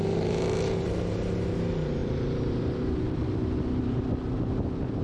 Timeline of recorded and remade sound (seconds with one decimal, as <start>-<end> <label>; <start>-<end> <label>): 0.0-2.0 recorded; 2.0-4.3 remade; 4.3-5.0 recorded

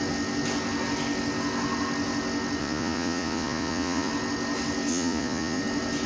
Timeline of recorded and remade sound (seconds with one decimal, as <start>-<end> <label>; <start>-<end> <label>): 0.0-2.6 recorded; 2.6-4.1 remade; 4.1-4.9 recorded; 4.9-5.6 remade; 5.6-6.1 recorded

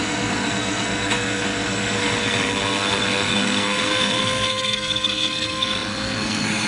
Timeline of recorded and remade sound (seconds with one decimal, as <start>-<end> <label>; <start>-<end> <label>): 0.0-6.7 remade

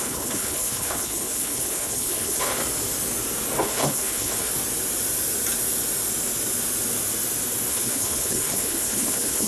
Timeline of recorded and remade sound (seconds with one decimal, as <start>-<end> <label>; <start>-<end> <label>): 0.0-2.6 remade; 2.6-3.6 recorded; 3.6-4.5 remade; 4.5-7.7 recorded; 7.7-9.5 remade

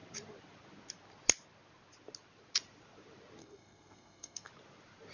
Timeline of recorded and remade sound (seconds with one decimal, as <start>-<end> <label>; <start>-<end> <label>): 0.0-3.4 recorded; 3.4-4.5 remade; 4.5-5.1 recorded

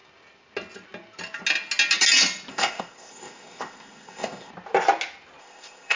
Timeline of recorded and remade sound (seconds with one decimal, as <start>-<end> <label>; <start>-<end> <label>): 0.0-2.5 recorded; 2.5-4.5 remade; 4.5-5.4 recorded; 5.4-6.0 remade

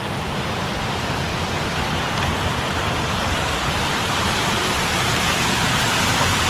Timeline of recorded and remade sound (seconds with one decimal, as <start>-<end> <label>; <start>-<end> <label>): 0.0-1.3 remade; 1.3-2.1 recorded; 2.1-6.5 remade

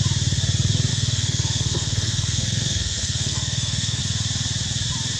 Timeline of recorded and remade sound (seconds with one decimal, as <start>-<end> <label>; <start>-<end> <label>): 0.0-0.9 recorded; 0.9-4.0 remade; 4.0-5.2 recorded